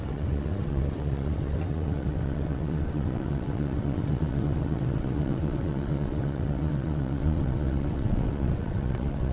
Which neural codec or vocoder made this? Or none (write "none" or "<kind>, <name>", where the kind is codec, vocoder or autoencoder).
vocoder, WaveNeXt